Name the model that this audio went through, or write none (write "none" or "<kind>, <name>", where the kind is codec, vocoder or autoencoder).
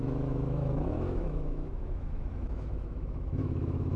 autoencoder, DAC-VAE